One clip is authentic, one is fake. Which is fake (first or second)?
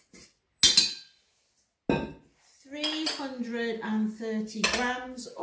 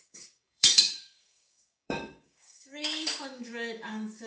second